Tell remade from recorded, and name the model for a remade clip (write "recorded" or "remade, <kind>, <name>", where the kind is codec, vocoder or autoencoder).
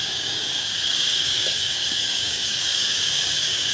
remade, codec, DAC